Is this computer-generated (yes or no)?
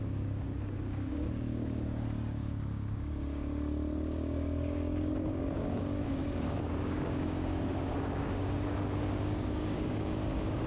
yes